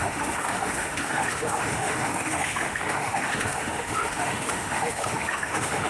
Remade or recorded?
remade